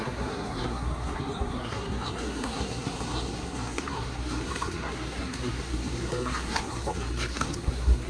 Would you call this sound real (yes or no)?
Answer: no